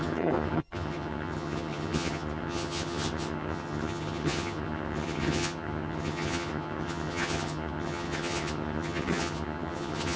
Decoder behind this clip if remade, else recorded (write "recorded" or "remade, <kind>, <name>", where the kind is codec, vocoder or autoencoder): remade, vocoder, HiFi-GAN